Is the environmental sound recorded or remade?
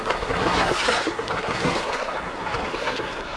remade